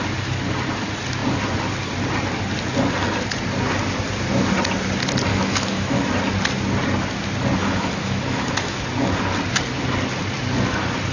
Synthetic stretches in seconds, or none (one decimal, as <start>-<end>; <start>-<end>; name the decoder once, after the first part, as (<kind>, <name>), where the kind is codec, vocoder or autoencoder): 5.3-6.1 (autoencoder, DAC-VAE); 7.6-8.8